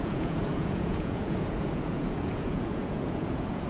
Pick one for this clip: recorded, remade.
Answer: remade